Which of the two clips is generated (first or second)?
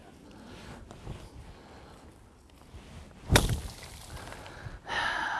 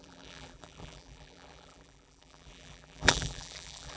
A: second